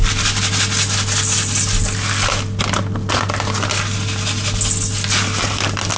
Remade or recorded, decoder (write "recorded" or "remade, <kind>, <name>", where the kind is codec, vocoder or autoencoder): recorded